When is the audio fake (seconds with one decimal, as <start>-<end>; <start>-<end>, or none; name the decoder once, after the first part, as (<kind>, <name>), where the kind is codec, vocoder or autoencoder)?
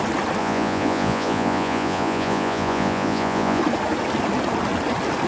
0.4-3.6 (vocoder, Vocos)